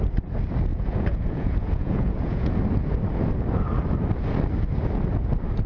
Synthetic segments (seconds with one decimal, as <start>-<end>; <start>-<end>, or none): 0.7-2.5